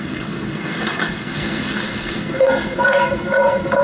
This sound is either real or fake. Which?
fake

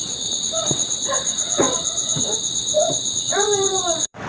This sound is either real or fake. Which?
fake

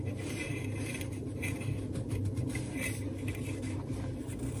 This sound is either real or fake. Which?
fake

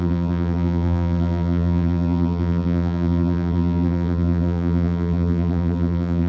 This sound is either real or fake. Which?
fake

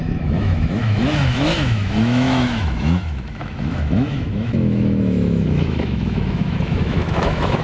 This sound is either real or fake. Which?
fake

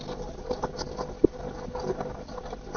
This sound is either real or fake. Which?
real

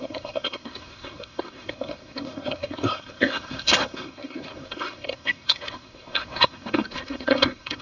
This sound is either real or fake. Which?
fake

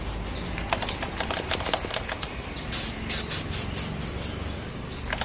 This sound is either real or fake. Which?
real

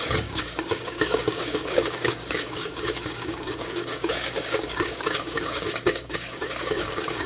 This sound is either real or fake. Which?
fake